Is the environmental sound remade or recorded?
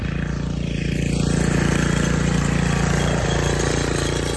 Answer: recorded